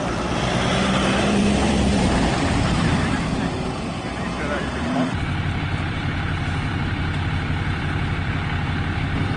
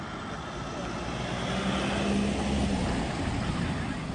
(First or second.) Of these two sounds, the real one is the second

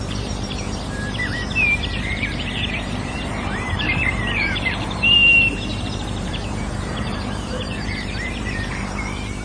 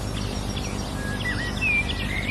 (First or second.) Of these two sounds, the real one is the second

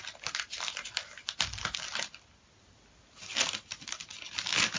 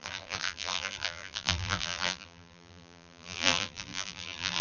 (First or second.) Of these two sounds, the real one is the first